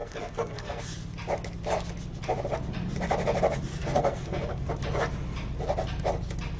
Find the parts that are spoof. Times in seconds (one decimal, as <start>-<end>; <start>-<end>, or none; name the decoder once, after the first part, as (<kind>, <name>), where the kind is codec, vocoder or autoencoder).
0.0-0.8 (codec, SNAC); 3.7-4.7